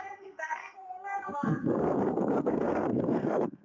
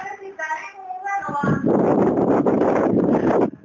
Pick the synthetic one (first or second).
first